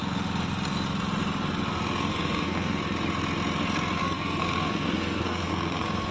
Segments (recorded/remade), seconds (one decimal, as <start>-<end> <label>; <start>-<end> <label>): 0.0-2.1 recorded; 2.1-2.8 remade; 2.8-4.0 recorded; 4.0-6.1 remade

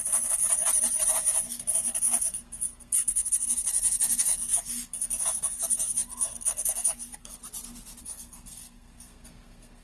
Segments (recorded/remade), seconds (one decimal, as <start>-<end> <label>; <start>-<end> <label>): 0.0-0.4 remade; 0.4-1.1 recorded; 1.1-7.4 remade; 7.4-8.0 recorded; 8.0-9.8 remade

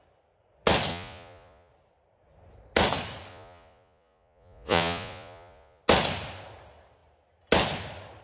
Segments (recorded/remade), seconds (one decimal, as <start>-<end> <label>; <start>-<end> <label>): 0.0-0.9 recorded; 0.9-1.7 remade; 1.7-3.3 recorded; 3.3-5.8 remade; 5.8-8.2 recorded

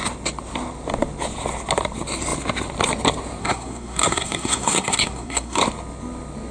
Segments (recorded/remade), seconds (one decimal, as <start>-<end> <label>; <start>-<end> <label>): 0.0-3.4 recorded; 3.4-5.6 remade; 5.6-6.5 recorded

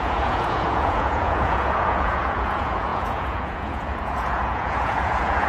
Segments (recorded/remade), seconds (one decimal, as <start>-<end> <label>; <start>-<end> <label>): 0.0-5.5 remade

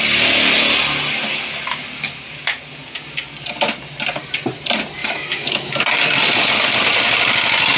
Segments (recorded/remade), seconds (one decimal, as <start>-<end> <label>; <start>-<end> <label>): 0.0-5.0 recorded; 5.0-5.7 remade; 5.7-7.8 recorded

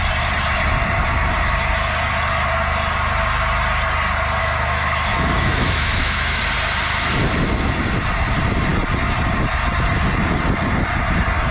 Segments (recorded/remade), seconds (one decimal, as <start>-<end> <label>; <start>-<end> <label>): 0.0-4.4 recorded; 4.4-6.4 remade; 6.4-11.5 recorded

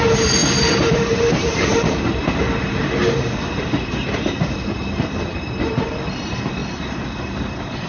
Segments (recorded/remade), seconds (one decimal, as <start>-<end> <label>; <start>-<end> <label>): 0.0-3.0 remade; 3.0-5.4 recorded; 5.4-6.6 remade; 6.6-7.9 recorded